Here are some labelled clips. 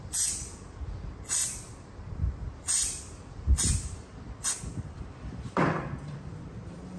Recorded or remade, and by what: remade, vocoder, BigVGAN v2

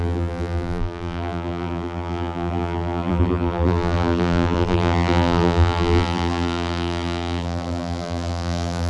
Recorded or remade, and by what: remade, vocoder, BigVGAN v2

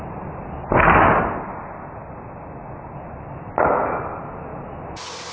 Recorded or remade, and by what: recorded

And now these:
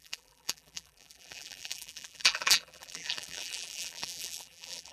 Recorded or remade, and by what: remade, vocoder, BigVGAN v2